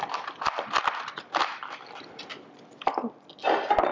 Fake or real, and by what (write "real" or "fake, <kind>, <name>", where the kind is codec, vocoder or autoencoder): real